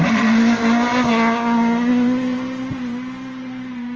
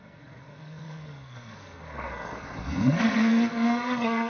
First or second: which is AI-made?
second